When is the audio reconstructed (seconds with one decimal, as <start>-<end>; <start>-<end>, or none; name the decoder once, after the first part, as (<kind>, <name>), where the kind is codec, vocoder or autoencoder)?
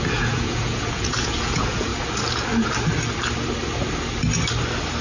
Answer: 0.0-1.9 (vocoder, Vocos)